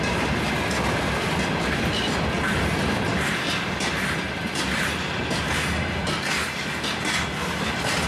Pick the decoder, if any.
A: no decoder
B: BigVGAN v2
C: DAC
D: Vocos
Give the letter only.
A